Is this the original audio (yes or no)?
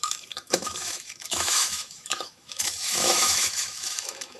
no